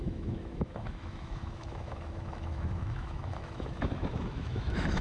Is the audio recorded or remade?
remade